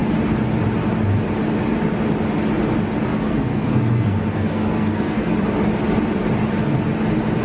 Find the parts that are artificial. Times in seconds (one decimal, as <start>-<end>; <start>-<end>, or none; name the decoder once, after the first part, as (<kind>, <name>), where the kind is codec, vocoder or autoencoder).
3.1-5.2 (codec, SNAC)